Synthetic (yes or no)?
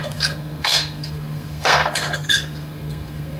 yes